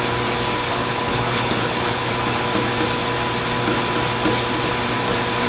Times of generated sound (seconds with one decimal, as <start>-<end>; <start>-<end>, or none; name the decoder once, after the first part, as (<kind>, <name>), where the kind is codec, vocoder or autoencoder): 0.6-2.1 (codec, HILCodec)